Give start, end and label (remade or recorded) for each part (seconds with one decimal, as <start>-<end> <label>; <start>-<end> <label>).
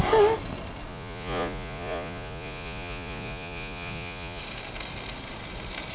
0.0-0.9 recorded; 0.9-4.4 remade; 4.4-5.9 recorded